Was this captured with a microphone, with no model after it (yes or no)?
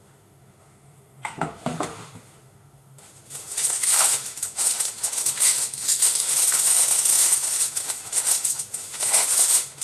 no